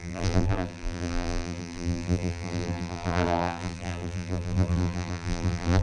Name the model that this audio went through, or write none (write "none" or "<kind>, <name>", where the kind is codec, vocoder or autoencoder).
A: vocoder, BigVGAN v2